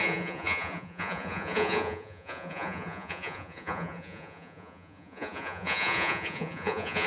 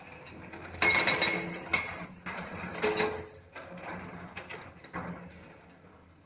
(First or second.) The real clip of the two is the second